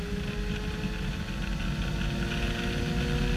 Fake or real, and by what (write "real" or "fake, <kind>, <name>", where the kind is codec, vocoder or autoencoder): real